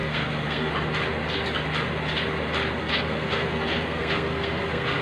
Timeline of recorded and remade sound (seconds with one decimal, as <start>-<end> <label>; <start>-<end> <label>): 0.0-0.7 remade; 0.7-2.8 recorded; 2.8-5.0 remade